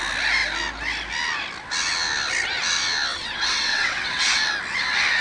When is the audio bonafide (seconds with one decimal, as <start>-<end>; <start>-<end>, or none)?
0.0-3.1; 4.4-5.2